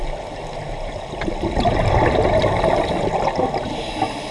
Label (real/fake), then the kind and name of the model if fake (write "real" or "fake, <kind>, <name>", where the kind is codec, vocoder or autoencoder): real